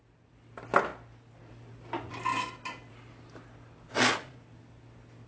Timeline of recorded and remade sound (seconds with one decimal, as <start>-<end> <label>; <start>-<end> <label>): 0.0-3.9 recorded; 3.9-4.4 remade; 4.4-5.3 recorded